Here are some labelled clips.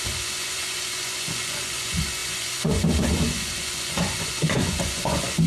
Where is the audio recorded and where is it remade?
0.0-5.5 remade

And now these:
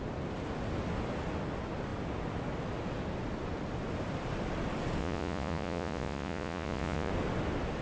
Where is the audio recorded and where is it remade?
0.0-5.0 recorded; 5.0-7.1 remade; 7.1-7.8 recorded

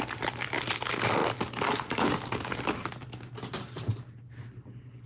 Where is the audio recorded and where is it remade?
0.0-5.1 recorded